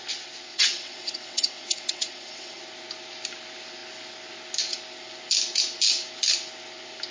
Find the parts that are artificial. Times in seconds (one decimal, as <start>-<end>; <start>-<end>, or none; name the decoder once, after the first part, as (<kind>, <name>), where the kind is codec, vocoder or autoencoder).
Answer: 0.5-2.6 (vocoder, WaveNeXt)